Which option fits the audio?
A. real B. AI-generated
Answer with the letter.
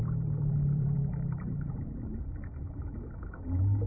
B